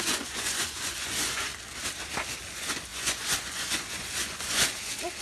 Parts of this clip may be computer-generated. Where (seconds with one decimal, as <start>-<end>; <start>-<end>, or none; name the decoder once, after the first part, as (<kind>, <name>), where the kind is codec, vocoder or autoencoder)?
0.0-1.5 (vocoder, Vocos); 2.5-5.2